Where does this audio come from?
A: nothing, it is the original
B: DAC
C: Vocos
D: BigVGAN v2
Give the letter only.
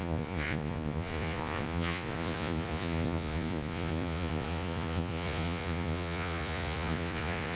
C